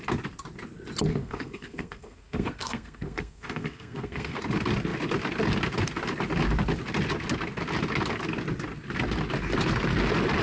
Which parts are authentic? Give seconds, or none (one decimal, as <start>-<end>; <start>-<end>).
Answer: 0.0-1.1; 4.4-10.4